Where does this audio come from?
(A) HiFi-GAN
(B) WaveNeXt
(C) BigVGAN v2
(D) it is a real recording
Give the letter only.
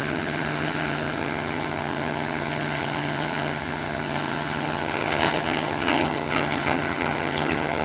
A